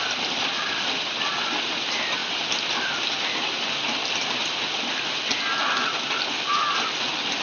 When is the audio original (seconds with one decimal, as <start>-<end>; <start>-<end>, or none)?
0.0-7.4